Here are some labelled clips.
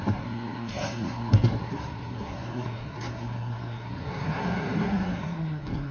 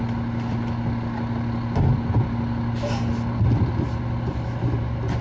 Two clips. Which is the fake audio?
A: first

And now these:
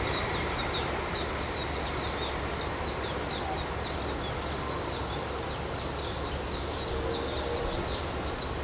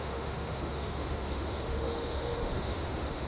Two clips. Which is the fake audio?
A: second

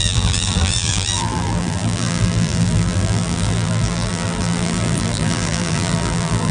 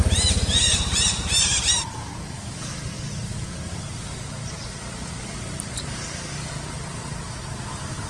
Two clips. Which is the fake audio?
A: first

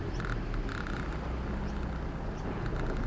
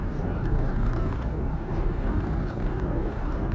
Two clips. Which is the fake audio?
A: second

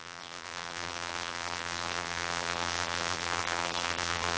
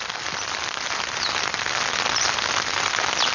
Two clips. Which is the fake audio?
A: first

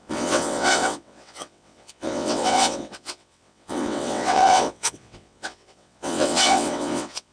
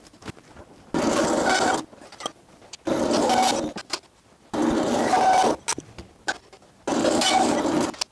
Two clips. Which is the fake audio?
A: first